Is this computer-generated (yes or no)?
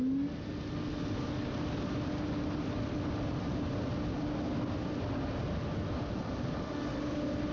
no